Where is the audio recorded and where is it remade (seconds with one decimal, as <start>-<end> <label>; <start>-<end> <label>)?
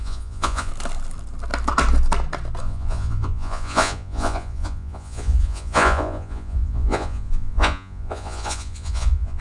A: 0.0-0.7 remade; 0.7-2.6 recorded; 2.6-9.4 remade